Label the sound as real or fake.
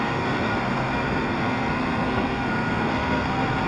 fake